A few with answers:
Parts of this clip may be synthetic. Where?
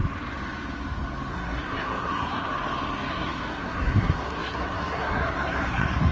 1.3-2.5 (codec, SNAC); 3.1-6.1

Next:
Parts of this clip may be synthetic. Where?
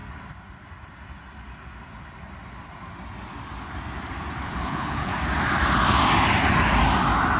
4.4-5.1 (codec, HILCodec)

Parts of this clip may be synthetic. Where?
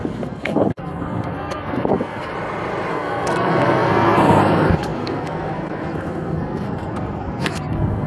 0.0-2.3 (codec, SNAC); 2.9-8.1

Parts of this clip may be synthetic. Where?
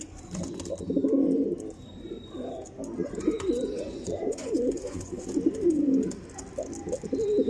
3.0-5.2 (vocoder, Vocos)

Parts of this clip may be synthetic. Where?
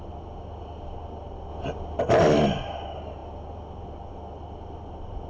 none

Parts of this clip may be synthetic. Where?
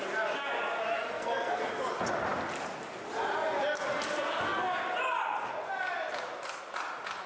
0.9-1.6 (codec, SNAC)